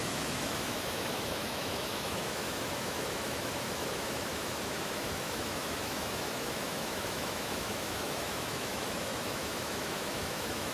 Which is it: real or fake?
fake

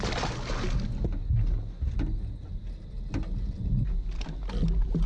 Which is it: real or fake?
real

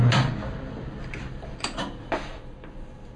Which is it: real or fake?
real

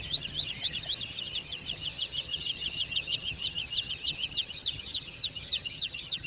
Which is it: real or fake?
fake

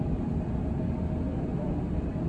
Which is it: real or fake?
real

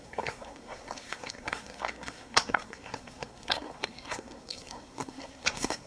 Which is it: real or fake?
fake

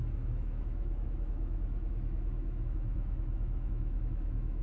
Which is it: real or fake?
fake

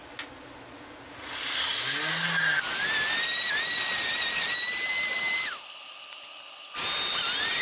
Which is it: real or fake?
real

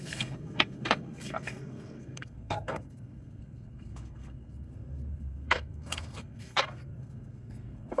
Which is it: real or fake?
fake